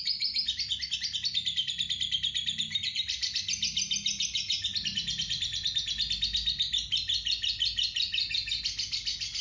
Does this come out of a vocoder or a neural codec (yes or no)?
no